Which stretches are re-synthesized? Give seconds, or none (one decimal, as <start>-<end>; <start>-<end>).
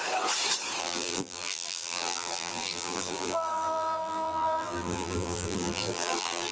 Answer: 0.8-6.5